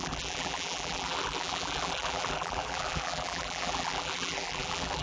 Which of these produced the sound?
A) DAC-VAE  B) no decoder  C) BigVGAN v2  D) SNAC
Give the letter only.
C